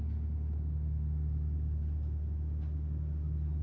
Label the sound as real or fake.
real